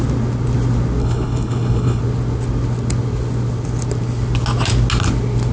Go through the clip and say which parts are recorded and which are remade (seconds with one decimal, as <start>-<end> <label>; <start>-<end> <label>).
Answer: 0.0-1.0 recorded; 1.0-2.0 remade; 2.0-5.5 recorded